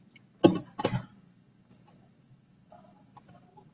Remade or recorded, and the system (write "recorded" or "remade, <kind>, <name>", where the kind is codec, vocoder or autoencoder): recorded